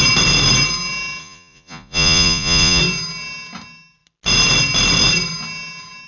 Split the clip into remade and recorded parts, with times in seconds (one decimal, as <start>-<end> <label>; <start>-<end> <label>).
0.0-1.2 recorded; 1.2-2.8 remade; 2.8-6.1 recorded

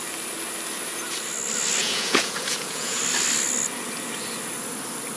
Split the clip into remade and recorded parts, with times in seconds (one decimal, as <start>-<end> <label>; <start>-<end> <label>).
0.0-1.8 recorded; 1.8-3.0 remade; 3.0-5.2 recorded